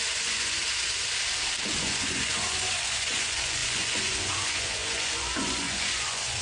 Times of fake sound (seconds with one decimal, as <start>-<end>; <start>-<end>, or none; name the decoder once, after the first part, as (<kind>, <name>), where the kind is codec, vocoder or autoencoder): 0.0-0.6 (vocoder, Vocos); 1.7-6.4